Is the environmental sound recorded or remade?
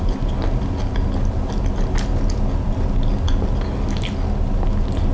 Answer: recorded